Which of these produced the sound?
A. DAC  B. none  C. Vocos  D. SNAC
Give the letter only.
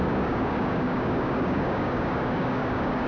A